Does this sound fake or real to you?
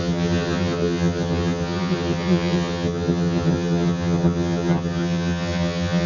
fake